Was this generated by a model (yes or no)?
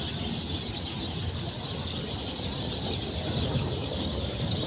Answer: no